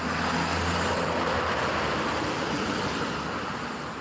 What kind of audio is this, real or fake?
real